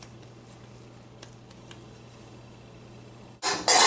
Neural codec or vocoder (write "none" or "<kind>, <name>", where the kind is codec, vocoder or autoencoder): none